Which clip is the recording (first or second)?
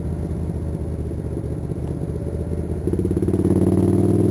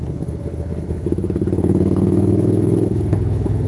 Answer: first